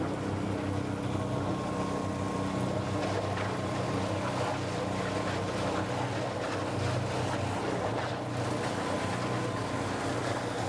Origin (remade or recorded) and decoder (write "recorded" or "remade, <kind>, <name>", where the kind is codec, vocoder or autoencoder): recorded